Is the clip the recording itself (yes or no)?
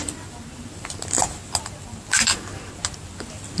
yes